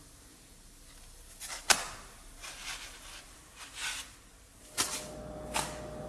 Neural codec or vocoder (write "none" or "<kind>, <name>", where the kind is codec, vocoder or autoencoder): none